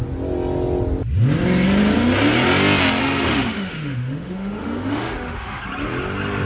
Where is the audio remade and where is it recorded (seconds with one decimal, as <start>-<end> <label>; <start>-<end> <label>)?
0.0-3.0 recorded; 3.0-5.6 remade; 5.6-6.5 recorded